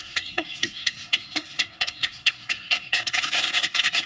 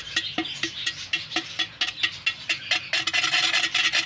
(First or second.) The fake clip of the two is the first